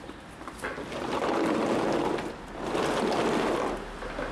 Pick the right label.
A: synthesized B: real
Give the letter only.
B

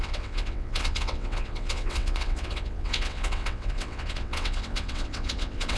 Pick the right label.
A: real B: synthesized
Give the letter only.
B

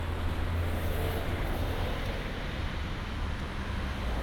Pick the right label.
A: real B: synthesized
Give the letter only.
A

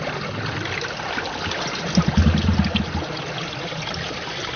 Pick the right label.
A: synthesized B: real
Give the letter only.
B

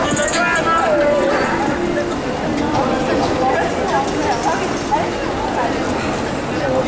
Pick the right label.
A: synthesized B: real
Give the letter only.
B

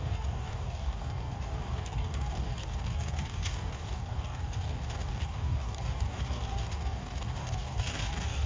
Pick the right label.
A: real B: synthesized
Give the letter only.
B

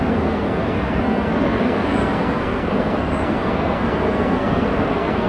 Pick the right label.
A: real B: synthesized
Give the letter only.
B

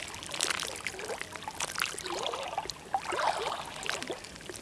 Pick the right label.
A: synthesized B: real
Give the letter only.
B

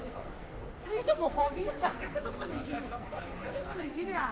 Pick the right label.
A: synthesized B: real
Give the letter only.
A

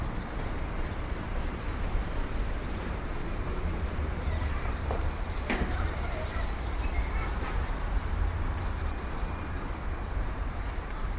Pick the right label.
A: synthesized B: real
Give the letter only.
A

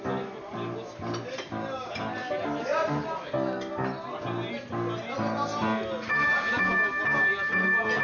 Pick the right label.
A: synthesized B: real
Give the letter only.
B